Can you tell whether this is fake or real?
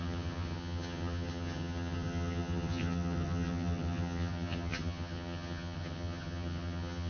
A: fake